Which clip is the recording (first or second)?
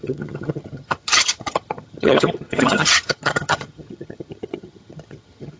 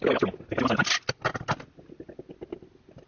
second